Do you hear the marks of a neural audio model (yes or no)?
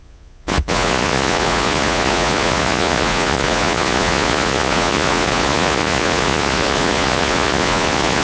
yes